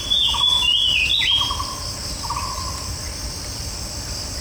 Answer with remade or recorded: recorded